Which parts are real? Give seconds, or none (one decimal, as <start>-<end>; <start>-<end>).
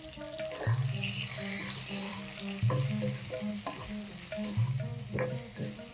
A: 0.0-5.9